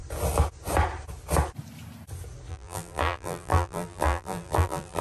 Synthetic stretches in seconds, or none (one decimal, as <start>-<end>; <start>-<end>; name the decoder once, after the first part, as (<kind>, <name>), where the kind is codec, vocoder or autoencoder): 2.5-5.0 (vocoder, BigVGAN v2)